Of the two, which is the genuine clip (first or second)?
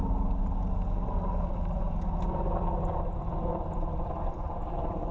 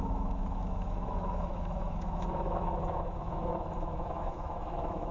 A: first